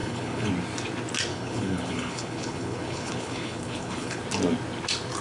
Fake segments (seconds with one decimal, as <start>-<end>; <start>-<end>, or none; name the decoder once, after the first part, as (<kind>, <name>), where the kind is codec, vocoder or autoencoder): 0.0-0.5 (codec, HILCodec); 1.3-4.2